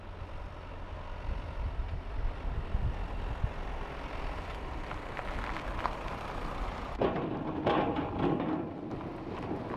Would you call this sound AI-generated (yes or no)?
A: no